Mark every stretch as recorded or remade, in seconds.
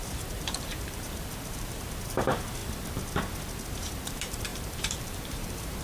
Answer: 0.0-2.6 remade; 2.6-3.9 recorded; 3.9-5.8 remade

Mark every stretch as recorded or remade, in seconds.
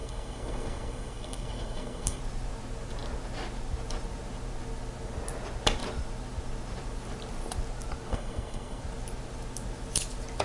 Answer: 0.0-2.2 remade; 2.2-8.1 recorded; 8.1-8.8 remade; 8.8-10.4 recorded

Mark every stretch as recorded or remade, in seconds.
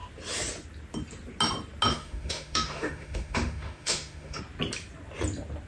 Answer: 0.0-1.9 recorded; 1.9-4.4 remade; 4.4-5.7 recorded